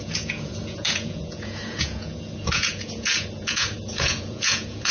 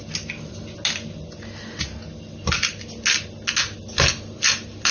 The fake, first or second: first